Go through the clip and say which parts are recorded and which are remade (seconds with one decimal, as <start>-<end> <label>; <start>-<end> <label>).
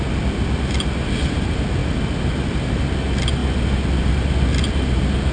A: 0.0-5.3 recorded